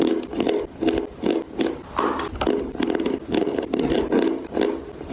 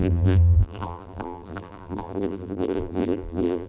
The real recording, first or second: first